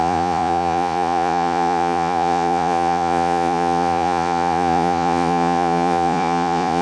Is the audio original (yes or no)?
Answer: no